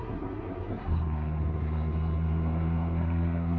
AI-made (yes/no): yes